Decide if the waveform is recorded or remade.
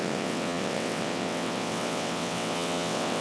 remade